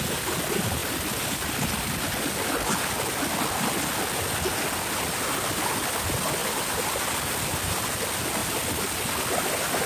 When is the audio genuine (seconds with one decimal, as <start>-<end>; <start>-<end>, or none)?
0.0-6.4; 7.2-9.9